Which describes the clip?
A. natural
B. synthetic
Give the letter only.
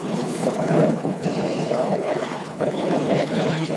B